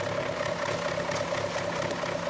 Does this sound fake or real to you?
real